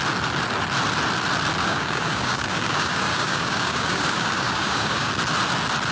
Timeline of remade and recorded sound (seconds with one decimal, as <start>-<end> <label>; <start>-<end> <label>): 0.0-1.6 recorded; 1.6-5.1 remade; 5.1-5.9 recorded